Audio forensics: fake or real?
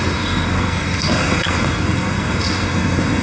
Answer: fake